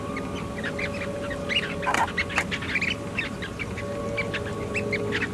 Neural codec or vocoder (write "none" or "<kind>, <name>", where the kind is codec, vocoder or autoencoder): none